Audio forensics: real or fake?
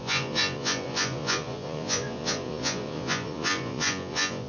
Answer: fake